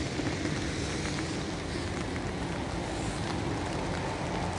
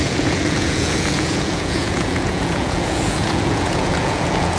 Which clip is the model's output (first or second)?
second